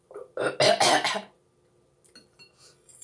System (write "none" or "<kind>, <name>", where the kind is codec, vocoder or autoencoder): none